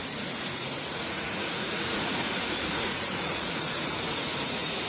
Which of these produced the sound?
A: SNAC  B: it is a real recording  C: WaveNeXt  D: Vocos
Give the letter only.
D